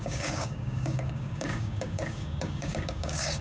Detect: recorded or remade remade